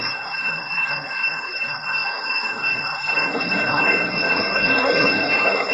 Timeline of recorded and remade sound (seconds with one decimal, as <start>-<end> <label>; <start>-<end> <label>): 0.0-5.7 remade